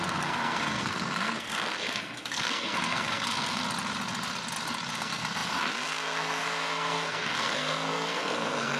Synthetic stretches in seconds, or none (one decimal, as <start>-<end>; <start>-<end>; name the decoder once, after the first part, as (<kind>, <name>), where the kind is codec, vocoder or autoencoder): 0.0-3.6 (codec, SNAC); 4.9-8.8